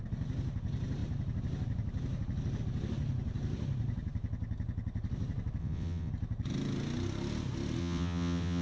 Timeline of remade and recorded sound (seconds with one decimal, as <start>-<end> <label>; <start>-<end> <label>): 0.0-5.6 recorded; 5.6-6.1 remade; 6.1-7.8 recorded; 7.8-8.6 remade